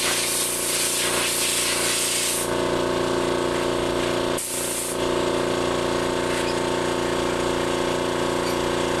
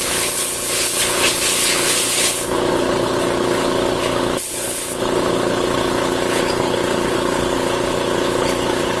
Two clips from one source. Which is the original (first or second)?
first